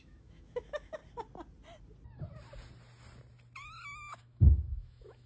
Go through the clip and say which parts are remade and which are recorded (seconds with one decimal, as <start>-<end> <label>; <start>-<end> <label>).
0.0-1.0 remade; 1.0-4.2 recorded; 4.2-5.3 remade